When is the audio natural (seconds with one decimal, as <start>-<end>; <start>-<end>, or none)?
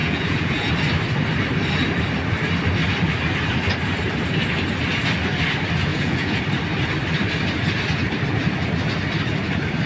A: 0.7-5.9; 6.4-9.9